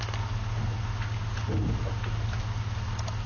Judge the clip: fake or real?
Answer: real